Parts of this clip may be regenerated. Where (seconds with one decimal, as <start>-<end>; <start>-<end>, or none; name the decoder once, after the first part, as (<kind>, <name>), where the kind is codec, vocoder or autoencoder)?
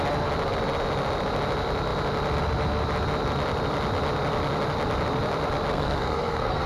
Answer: 5.7-6.7 (codec, SNAC)